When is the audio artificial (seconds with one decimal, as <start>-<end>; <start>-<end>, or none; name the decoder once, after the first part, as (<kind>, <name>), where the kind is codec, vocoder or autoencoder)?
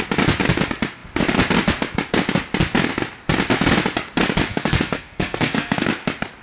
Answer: 4.5-5.9 (codec, SNAC)